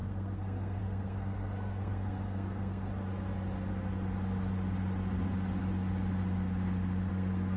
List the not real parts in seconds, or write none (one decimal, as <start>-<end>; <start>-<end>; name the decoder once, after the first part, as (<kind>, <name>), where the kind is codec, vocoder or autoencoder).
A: 0.0-2.9 (codec, SNAC); 7.1-7.6